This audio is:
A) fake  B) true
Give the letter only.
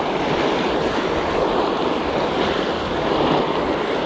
B